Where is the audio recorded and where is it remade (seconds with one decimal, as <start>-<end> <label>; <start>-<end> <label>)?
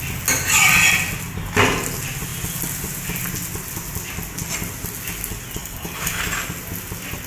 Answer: 0.0-5.6 recorded; 5.6-6.2 remade; 6.2-7.3 recorded